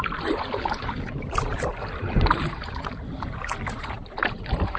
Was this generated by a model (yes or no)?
yes